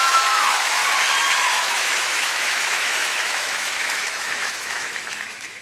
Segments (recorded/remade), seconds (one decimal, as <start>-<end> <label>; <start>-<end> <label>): 0.0-0.8 remade; 0.8-1.4 recorded; 1.4-5.6 remade